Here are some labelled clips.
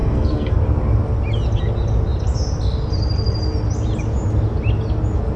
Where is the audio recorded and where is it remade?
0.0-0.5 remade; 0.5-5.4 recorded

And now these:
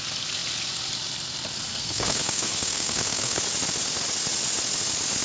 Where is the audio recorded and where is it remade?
0.0-1.7 recorded; 1.7-3.4 remade; 3.4-5.2 recorded

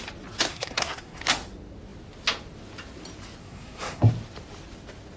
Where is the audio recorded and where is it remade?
0.0-0.5 recorded; 0.5-1.2 remade; 1.2-3.4 recorded; 3.4-4.1 remade; 4.1-5.2 recorded

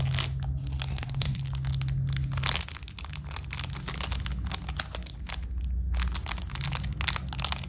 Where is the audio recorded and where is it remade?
0.0-0.9 recorded; 0.9-1.4 remade; 1.4-7.7 recorded

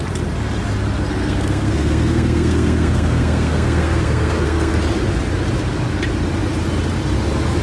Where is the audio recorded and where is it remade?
0.0-1.2 recorded; 1.2-4.7 remade; 4.7-7.6 recorded